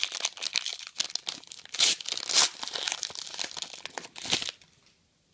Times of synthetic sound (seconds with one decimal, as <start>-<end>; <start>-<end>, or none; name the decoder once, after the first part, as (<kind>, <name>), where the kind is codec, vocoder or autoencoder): none